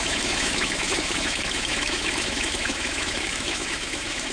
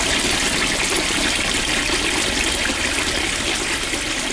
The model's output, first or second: first